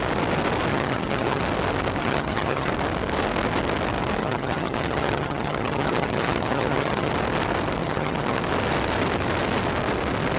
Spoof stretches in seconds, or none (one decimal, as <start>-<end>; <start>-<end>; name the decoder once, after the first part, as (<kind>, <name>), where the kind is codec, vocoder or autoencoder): 0.7-1.4 (vocoder, HiFi-GAN); 2.0-2.7; 4.2-7.1; 7.8-8.4